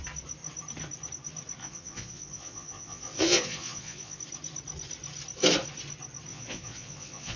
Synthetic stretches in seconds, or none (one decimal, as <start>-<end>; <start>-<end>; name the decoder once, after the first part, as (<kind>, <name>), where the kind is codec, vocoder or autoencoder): 1.6-4.2 (vocoder, Vocos); 6.3-7.4